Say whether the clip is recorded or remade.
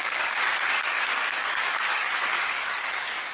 remade